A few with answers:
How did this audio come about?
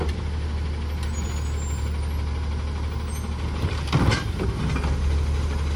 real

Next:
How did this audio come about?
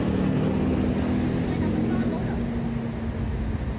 real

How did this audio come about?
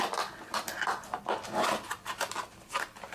real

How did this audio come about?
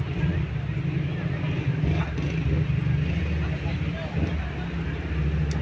real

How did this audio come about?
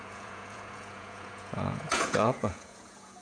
fake